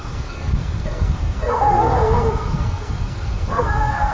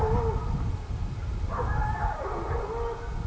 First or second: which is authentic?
second